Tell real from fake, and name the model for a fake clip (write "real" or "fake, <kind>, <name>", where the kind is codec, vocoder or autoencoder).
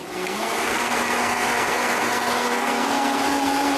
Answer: fake, codec, SNAC